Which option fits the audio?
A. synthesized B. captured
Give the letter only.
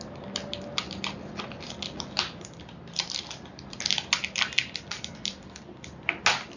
B